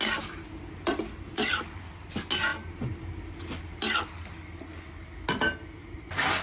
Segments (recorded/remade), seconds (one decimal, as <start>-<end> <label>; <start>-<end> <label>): 0.0-6.4 recorded